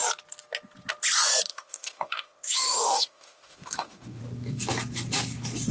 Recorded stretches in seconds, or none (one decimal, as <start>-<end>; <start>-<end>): 0.0-1.5; 4.2-5.7